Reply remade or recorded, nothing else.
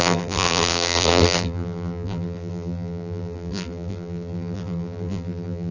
remade